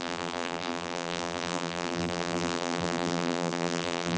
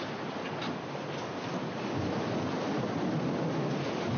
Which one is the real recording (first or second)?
second